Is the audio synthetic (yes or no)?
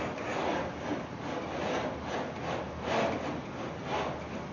no